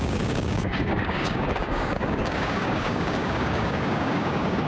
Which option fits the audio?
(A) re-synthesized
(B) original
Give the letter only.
A